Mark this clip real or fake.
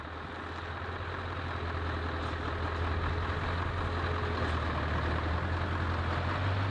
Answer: real